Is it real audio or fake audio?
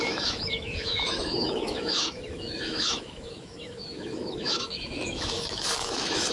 fake